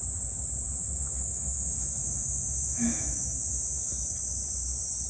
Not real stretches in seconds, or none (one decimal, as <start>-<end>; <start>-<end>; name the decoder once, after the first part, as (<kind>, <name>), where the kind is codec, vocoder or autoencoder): 0.8-3.9 (autoencoder, DAC-VAE)